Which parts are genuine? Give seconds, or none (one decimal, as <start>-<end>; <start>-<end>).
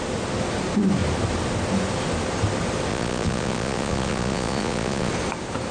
0.0-2.9; 5.1-5.7